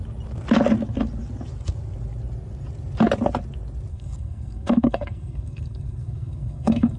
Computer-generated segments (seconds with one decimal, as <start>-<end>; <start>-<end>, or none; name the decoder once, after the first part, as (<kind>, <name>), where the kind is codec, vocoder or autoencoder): 3.9-7.0 (codec, SNAC)